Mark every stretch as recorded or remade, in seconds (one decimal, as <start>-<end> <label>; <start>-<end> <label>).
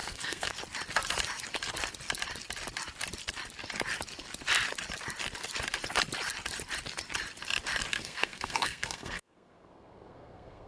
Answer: 0.0-0.5 remade; 0.5-7.9 recorded; 7.9-10.7 remade